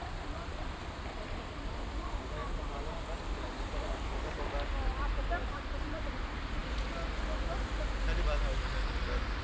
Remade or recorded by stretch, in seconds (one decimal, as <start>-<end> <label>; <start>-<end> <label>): 0.0-6.6 remade; 6.6-8.9 recorded; 8.9-9.4 remade